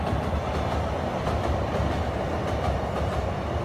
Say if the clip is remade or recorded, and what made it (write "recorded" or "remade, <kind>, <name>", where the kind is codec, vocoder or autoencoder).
recorded